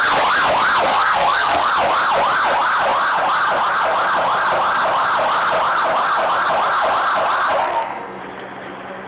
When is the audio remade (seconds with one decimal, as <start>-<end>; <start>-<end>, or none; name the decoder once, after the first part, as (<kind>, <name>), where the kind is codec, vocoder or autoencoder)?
0.9-1.7 (codec, SNAC); 7.6-8.2